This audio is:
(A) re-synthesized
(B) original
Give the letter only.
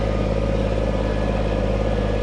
B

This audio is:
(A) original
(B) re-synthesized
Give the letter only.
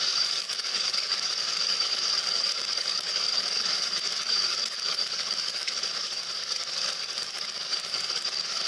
B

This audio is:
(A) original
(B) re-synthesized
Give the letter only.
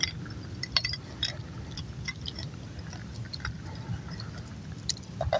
A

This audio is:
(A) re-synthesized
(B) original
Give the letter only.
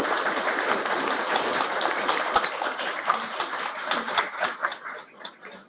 A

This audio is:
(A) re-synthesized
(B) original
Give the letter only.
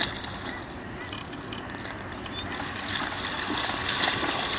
B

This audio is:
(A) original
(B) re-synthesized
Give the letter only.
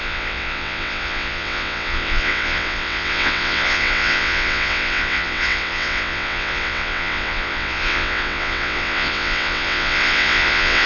B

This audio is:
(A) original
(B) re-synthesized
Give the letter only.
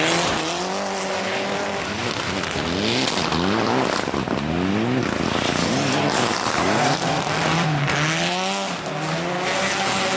A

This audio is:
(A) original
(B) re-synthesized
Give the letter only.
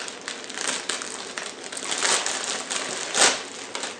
A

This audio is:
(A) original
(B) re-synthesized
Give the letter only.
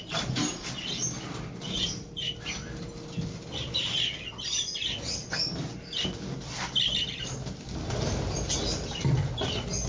A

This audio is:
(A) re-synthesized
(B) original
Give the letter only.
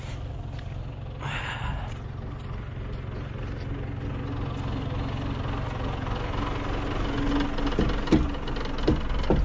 B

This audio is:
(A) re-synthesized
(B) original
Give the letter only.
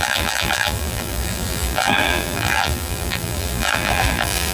A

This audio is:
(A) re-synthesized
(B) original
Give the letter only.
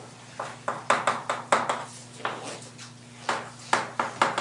B